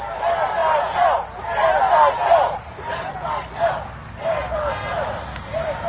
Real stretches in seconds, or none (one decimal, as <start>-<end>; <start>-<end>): 0.0-5.9

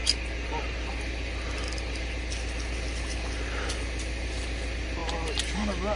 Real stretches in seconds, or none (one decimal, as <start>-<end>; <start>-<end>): 0.0-6.0

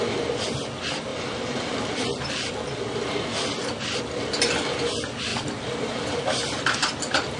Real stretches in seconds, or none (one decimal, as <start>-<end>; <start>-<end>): 0.0-1.1; 2.8-5.3; 6.1-7.4

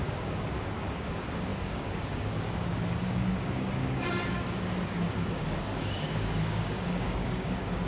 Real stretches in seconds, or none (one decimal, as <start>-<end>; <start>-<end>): none

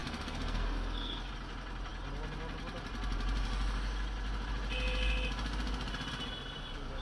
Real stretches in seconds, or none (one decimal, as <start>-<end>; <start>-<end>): 1.3-7.0

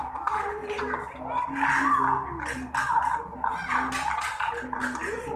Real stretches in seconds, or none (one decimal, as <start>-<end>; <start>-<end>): 0.0-5.4